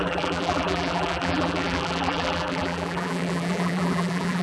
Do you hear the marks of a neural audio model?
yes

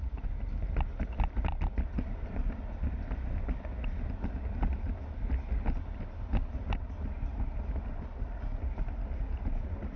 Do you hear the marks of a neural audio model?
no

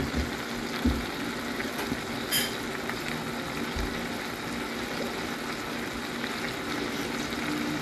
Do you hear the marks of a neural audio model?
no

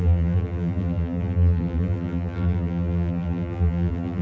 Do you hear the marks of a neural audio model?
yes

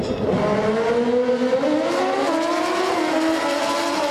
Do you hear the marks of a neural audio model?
no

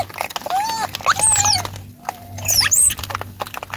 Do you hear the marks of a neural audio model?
no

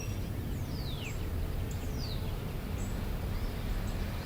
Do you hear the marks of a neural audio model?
no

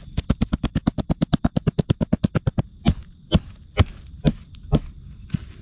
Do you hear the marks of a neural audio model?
no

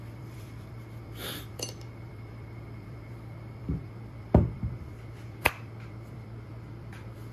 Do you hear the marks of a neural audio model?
yes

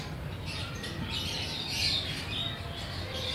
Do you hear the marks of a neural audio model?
no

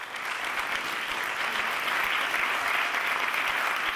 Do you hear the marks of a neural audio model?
no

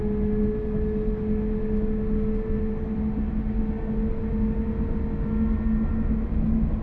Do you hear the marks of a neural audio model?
no